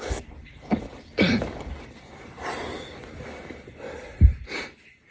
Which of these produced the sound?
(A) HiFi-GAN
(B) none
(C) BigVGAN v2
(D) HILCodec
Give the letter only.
B